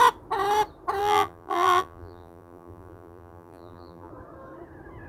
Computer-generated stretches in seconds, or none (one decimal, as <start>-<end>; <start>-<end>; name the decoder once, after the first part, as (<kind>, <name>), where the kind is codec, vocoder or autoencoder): 1.0-4.1 (vocoder, BigVGAN v2)